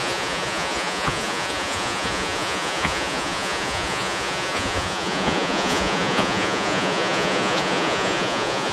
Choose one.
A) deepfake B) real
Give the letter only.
A